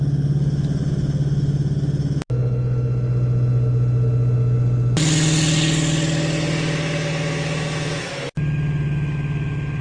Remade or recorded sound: recorded